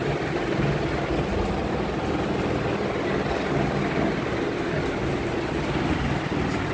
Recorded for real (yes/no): yes